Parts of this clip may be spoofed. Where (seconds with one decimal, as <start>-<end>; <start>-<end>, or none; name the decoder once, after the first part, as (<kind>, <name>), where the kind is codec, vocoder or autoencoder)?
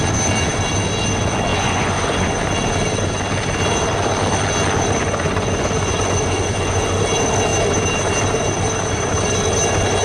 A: 1.5-2.4 (vocoder, Vocos); 5.0-7.0